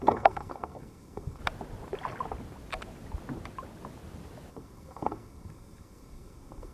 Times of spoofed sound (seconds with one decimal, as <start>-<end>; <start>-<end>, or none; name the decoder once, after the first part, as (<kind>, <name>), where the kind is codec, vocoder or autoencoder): 0.0-1.4 (codec, SNAC); 4.5-6.7